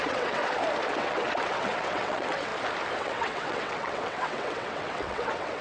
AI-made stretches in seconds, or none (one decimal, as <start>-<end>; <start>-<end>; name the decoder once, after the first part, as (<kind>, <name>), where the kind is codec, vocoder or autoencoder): 0.0-0.4 (vocoder, WaveNeXt); 1.0-2.5; 3.0-5.6